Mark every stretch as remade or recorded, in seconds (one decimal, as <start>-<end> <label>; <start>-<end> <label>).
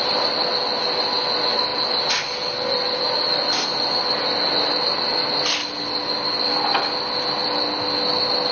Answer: 0.0-8.5 recorded